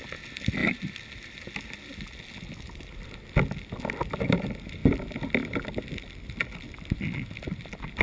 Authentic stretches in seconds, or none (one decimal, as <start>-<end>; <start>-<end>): 0.0-8.0